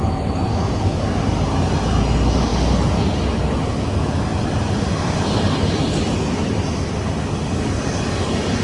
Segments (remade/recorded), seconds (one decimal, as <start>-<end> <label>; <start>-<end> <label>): 0.0-8.6 recorded